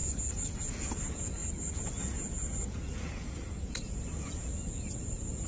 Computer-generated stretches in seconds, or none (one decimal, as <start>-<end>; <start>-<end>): 0.0-5.5